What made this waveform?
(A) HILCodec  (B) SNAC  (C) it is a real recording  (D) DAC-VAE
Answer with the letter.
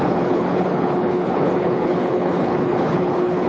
A